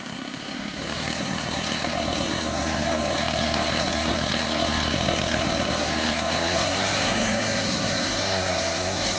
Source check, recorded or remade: remade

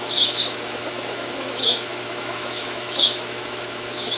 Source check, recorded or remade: remade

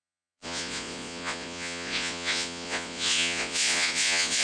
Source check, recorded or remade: remade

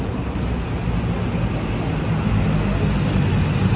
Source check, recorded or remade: recorded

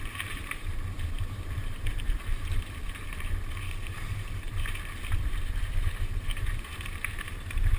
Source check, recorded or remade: remade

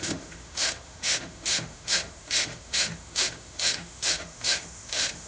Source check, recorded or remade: remade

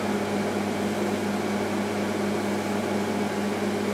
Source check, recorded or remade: recorded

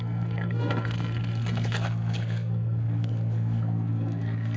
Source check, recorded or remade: remade